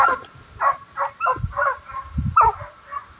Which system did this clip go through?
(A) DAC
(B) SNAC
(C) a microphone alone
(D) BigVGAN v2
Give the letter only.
C